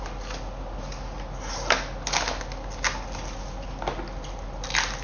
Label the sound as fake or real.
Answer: real